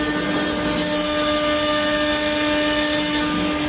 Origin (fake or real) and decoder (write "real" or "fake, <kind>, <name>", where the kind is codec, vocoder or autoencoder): real